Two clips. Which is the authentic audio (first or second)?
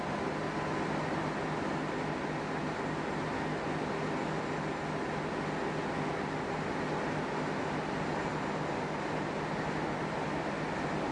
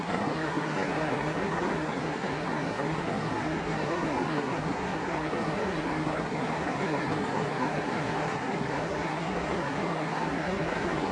first